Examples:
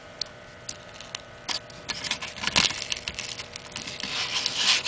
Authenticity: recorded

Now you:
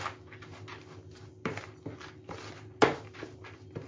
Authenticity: recorded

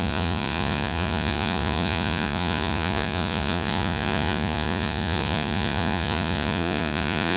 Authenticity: remade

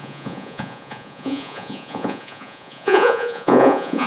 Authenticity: remade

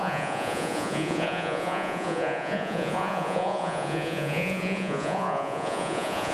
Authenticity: remade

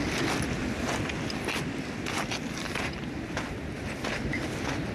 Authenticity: recorded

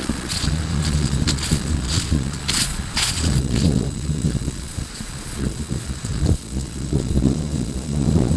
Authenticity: remade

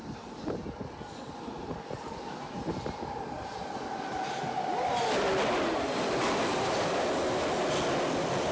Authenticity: recorded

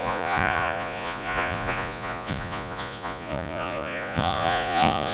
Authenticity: remade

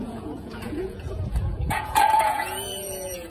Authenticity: remade